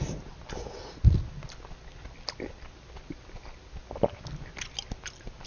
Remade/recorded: recorded